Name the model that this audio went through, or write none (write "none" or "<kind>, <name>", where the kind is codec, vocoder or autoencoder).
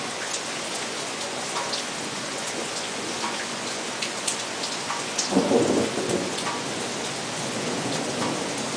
vocoder, Vocos